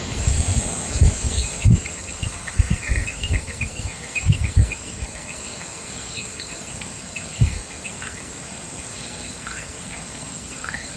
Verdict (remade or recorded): remade